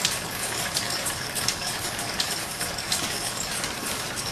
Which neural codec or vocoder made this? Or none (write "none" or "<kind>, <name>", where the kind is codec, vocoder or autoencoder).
codec, DAC